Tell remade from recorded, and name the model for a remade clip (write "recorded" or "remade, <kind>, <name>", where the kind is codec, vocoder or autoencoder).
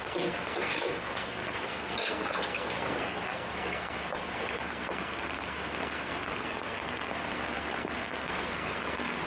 remade, codec, SNAC